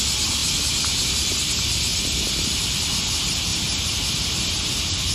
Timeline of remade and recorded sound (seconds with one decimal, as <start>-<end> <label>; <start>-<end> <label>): 0.0-5.1 recorded